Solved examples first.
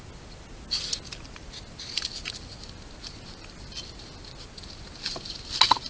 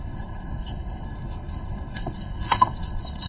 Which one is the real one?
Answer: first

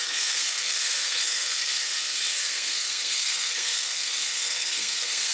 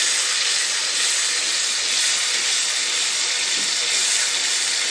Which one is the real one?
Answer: second